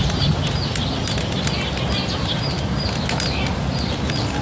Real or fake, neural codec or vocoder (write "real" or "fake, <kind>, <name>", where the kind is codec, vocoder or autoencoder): real